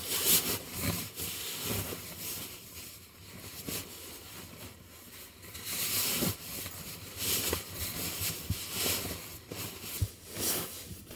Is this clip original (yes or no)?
yes